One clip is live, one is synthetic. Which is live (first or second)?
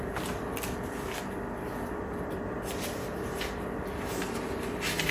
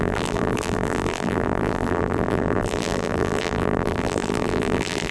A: first